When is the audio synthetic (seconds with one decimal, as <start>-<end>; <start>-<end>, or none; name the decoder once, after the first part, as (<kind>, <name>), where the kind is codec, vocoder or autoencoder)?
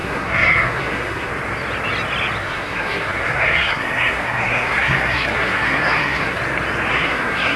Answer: 0.0-1.3 (codec, SNAC); 2.4-6.4; 6.9-7.6